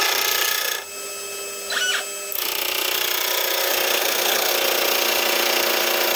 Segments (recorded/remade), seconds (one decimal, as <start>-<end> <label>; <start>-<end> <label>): 0.0-4.0 recorded; 4.0-4.5 remade; 4.5-6.2 recorded